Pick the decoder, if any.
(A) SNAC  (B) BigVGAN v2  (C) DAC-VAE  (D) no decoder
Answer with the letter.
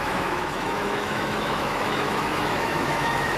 C